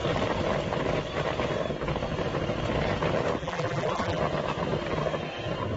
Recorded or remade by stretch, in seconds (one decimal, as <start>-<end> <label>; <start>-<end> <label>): 0.0-3.4 recorded; 3.4-4.2 remade; 4.2-5.8 recorded